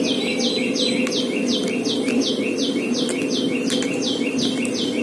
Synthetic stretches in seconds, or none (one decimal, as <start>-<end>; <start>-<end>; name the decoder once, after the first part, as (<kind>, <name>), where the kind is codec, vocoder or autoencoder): none